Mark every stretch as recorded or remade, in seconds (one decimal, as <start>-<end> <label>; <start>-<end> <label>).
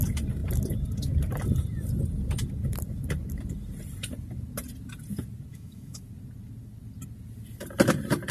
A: 0.0-5.5 recorded; 5.5-6.0 remade; 6.0-8.3 recorded